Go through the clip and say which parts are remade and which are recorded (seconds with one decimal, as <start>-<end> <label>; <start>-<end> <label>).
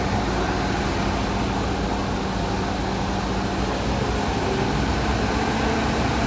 0.0-6.3 recorded